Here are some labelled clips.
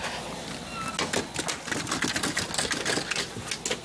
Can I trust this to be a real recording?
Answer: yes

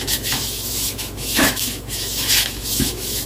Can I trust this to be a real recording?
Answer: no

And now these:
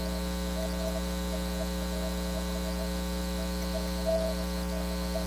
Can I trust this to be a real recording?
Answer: yes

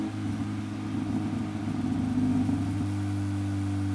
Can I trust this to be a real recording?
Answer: yes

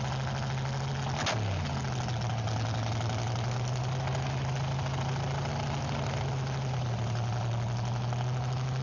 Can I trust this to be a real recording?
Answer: yes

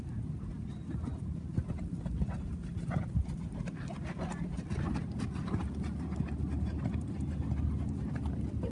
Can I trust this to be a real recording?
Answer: yes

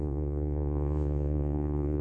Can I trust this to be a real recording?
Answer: no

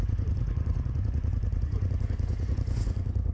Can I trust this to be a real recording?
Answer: no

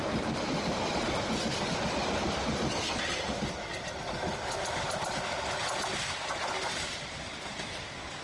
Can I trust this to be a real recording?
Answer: yes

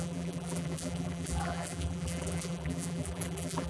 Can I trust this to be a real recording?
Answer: no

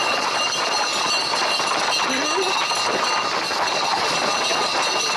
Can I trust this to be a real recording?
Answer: yes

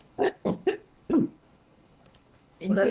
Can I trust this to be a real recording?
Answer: no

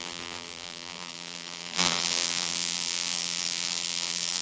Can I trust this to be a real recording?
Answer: no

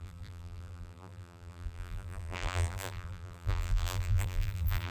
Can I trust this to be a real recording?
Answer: no